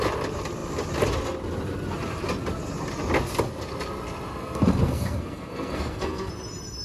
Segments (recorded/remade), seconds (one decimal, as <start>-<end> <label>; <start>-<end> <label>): 0.0-4.3 recorded; 4.3-6.3 remade; 6.3-6.8 recorded